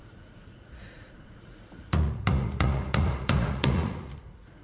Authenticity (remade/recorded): remade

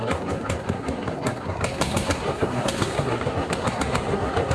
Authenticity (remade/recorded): remade